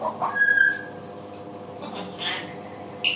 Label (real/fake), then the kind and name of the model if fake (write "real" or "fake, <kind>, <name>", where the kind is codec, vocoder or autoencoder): real